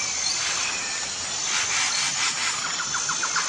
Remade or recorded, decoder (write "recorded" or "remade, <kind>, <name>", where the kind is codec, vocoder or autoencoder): recorded